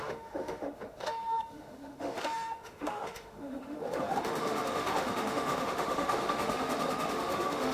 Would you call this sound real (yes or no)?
no